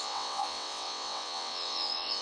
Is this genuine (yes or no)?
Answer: no